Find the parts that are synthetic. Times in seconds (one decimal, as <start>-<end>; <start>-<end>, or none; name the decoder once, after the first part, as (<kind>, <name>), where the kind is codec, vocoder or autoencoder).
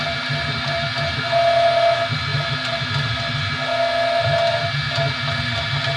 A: none